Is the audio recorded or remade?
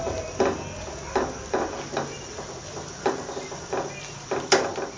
recorded